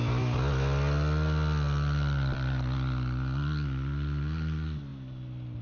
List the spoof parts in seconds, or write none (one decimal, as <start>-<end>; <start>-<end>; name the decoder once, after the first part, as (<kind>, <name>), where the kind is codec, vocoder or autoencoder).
none